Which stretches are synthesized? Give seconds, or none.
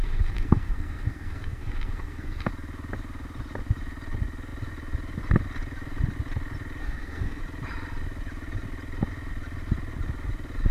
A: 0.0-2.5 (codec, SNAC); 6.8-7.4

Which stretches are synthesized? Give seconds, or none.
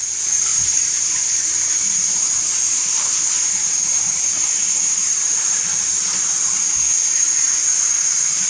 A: 0.5-5.6 (vocoder, BigVGAN v2)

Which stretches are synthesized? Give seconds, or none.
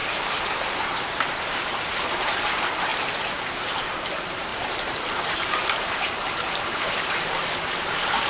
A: 0.0-2.9 (vocoder, BigVGAN v2); 3.6-8.3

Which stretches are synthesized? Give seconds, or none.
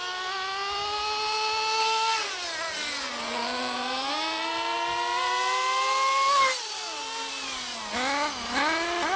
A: 1.8-2.3 (codec, SNAC)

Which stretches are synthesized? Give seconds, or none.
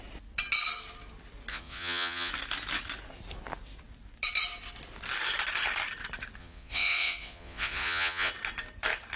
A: 1.5-2.3 (vocoder, Vocos); 6.4-8.3